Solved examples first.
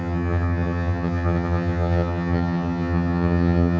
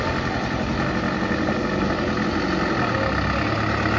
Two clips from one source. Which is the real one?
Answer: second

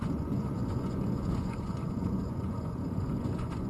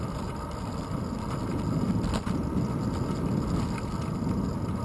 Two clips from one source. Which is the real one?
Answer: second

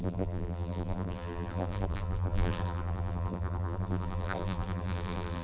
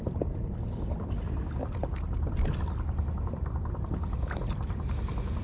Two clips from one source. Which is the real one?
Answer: second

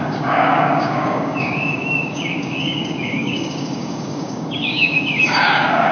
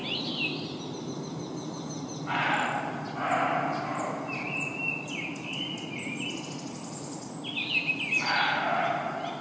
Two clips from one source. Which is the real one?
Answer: second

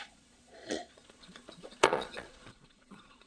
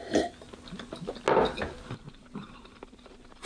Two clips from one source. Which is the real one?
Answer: second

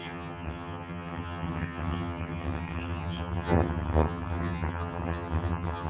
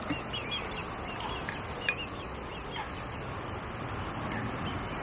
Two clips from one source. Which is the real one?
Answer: second